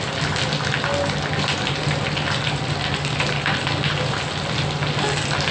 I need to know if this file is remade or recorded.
recorded